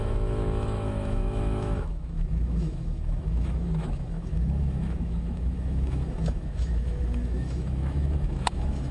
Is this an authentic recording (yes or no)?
no